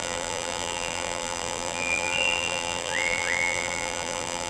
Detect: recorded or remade remade